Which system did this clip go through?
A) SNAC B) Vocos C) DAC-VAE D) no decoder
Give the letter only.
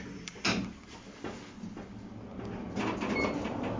D